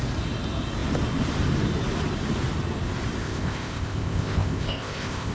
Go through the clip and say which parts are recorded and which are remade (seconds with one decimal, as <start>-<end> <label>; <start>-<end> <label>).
0.0-3.2 recorded; 3.2-5.3 remade